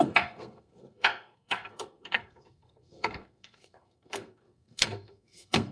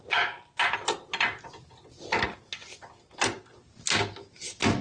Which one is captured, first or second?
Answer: second